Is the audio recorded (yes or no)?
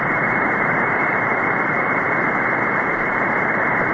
no